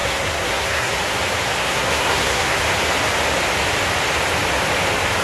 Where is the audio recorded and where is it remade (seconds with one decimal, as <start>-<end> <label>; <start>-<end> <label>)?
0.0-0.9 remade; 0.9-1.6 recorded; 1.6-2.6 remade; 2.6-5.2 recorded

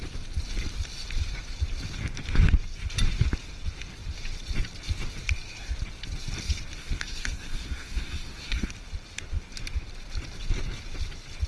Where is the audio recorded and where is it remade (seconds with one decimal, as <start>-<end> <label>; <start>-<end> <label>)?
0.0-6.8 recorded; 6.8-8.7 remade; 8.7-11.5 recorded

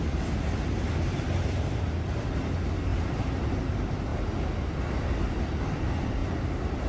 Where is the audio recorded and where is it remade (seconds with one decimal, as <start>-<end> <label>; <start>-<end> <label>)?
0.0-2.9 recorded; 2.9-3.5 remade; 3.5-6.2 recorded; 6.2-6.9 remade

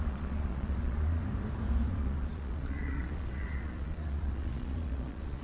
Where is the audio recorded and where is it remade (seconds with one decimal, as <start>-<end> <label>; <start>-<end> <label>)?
0.0-1.2 remade; 1.2-1.9 recorded; 1.9-5.4 remade

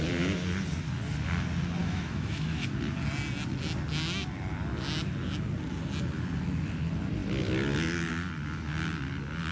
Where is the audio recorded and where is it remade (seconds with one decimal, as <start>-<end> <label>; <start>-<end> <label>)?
0.0-1.8 recorded; 1.8-2.7 remade; 2.7-9.5 recorded

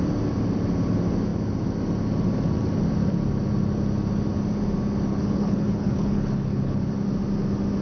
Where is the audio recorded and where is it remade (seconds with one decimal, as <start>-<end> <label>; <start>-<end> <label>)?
0.0-5.1 recorded; 5.1-6.9 remade; 6.9-7.8 recorded

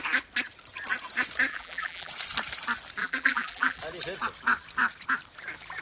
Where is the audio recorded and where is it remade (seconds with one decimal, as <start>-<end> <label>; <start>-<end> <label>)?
0.0-1.5 recorded; 1.5-2.1 remade; 2.1-3.0 recorded; 3.0-3.8 remade; 3.8-5.8 recorded